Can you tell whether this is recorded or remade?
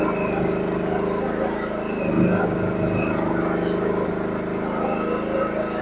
recorded